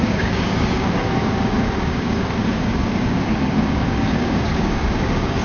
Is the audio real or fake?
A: fake